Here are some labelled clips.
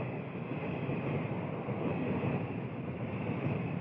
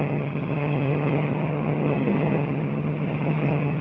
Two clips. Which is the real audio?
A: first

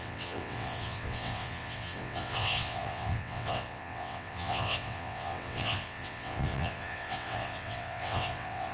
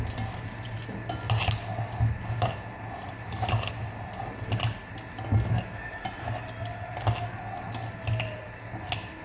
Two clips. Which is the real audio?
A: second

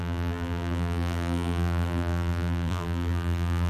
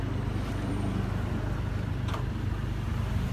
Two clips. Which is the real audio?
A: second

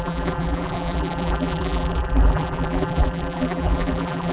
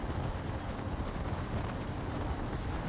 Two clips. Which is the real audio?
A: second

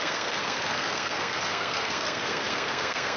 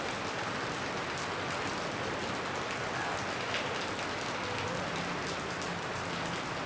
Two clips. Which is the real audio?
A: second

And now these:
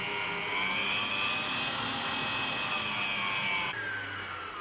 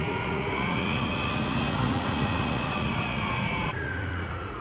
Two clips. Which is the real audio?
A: first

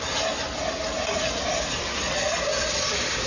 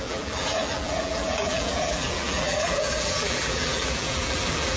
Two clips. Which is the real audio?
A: first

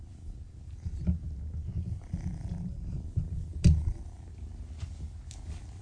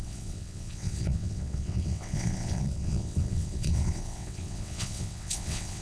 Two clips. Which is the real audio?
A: first